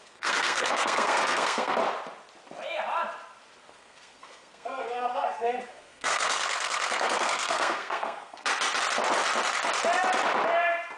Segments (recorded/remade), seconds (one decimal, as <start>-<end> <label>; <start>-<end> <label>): 0.0-1.8 remade; 1.8-3.7 recorded; 3.7-8.5 remade; 8.5-11.0 recorded